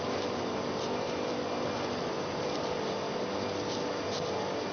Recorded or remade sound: recorded